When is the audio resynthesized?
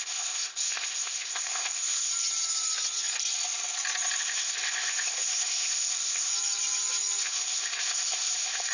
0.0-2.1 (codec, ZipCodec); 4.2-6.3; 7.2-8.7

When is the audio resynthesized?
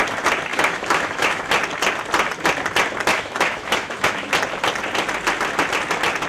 0.5-1.5 (autoencoder, DAC-VAE); 3.1-4.3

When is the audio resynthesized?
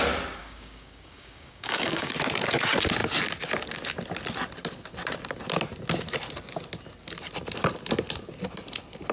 0.4-2.1 (codec, DAC)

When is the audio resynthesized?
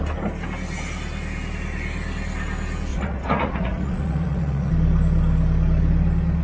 2.9-4.7 (vocoder, Vocos)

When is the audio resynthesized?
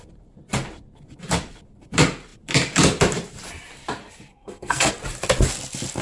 4.3-4.9 (codec, SNAC)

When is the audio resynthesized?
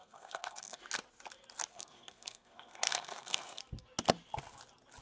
0.0-0.8 (codec, SNAC); 1.7-3.6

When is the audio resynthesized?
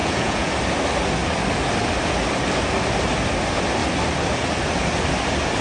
0.0-0.5 (vocoder, Vocos)